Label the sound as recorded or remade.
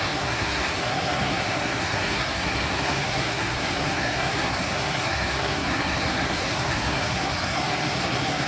remade